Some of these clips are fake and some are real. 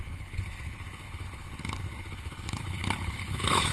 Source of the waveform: fake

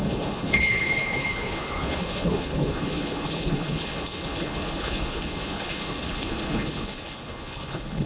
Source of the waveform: fake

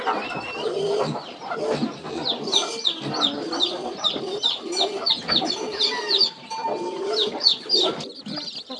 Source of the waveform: real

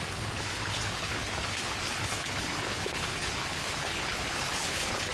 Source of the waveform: fake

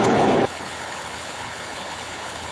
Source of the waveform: fake